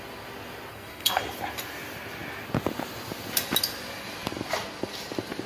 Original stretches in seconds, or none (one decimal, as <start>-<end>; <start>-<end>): 0.0-0.7; 1.2-5.5